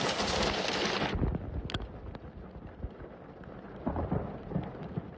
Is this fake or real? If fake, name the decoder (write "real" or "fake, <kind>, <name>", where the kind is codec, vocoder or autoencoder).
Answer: real